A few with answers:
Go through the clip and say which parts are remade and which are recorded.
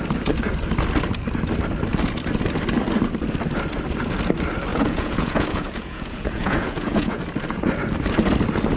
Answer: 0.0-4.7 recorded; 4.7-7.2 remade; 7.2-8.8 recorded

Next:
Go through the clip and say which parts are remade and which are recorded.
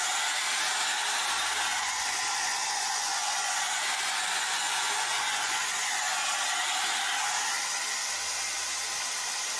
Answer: 0.0-1.7 recorded; 1.7-6.2 remade; 6.2-9.6 recorded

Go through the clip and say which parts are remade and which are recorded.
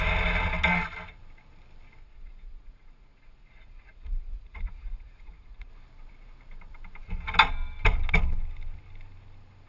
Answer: 0.0-2.0 recorded; 2.0-5.7 remade; 5.7-9.7 recorded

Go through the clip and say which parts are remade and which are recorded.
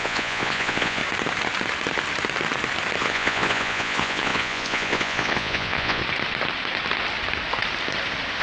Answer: 0.0-1.0 remade; 1.0-3.0 recorded; 3.0-6.0 remade; 6.0-8.4 recorded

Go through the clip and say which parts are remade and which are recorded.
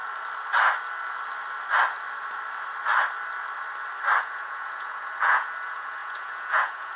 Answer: 0.0-4.2 recorded; 4.2-7.0 remade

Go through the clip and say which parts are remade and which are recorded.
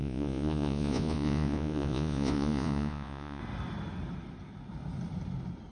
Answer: 0.0-3.4 remade; 3.4-5.7 recorded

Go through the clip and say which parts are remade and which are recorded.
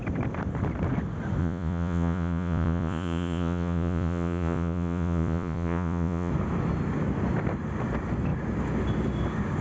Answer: 0.0-1.4 recorded; 1.4-6.3 remade; 6.3-9.6 recorded